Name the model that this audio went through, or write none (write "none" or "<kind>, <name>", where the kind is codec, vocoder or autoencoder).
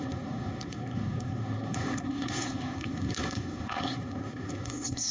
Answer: codec, SNAC